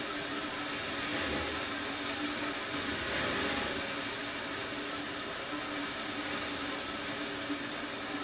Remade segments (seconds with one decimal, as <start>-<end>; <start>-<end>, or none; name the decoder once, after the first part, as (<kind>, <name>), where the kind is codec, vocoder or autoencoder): none